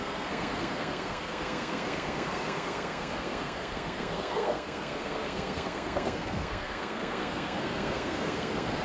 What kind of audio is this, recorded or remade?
remade